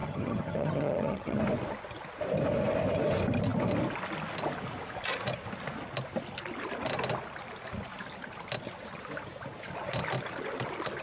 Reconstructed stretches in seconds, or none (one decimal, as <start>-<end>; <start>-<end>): 0.0-1.4